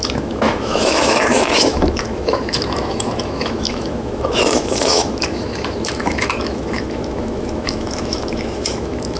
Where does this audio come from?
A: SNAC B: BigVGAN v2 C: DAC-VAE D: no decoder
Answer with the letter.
C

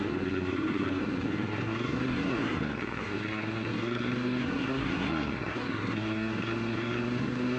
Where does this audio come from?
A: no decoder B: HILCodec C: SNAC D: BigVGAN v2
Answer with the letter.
C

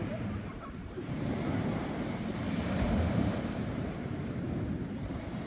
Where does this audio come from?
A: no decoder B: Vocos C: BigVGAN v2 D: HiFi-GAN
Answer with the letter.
C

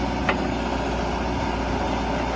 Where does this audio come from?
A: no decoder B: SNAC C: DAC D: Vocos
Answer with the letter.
A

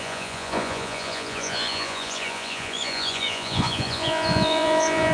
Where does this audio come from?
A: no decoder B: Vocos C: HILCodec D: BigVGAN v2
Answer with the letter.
B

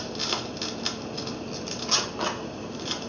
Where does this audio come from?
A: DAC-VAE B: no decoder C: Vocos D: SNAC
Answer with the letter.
B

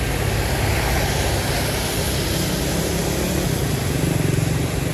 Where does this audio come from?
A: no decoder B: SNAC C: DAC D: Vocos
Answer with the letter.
A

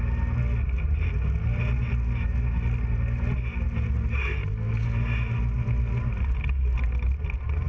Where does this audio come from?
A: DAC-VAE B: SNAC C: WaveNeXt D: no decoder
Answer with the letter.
D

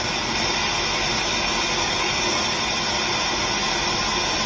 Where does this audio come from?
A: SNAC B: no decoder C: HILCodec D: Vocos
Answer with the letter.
B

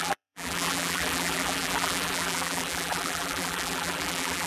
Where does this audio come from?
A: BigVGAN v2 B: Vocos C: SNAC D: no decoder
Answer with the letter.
A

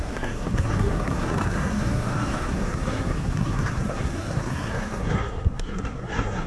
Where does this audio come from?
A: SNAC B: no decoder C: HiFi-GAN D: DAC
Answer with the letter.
A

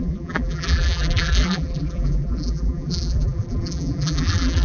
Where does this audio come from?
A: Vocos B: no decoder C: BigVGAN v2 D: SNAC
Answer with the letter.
C